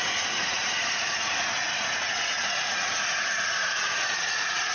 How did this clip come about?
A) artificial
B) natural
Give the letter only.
A